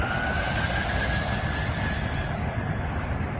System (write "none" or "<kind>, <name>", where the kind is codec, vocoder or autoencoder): none